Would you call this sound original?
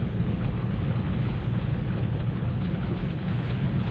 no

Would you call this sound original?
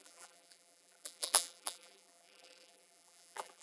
no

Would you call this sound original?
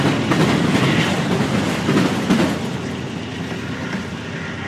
yes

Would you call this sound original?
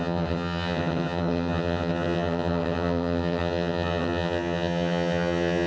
no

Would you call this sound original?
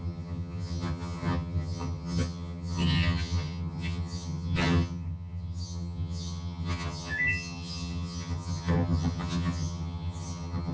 no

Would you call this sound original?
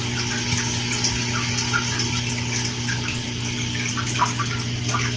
yes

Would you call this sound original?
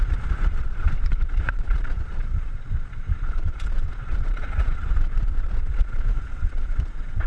no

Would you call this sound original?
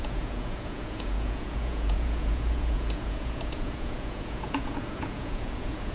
no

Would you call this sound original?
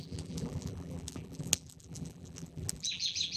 no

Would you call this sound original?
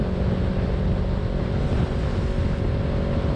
yes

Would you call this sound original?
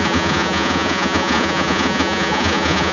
no